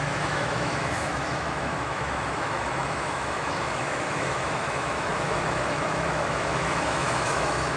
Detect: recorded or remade remade